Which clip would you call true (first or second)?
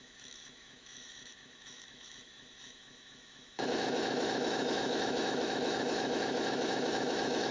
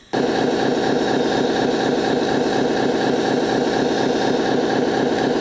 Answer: second